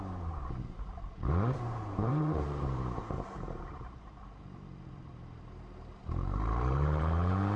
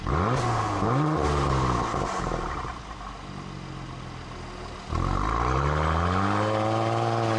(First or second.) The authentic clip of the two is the second